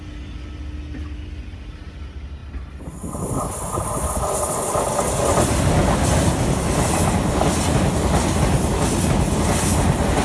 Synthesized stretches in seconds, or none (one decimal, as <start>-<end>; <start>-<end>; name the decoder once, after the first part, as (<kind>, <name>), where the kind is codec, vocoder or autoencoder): none